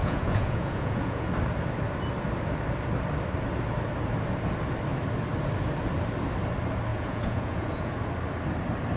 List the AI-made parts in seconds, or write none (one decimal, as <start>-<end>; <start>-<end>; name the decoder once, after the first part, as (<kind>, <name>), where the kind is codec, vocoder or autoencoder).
0.0-1.3 (vocoder, Vocos); 6.9-8.0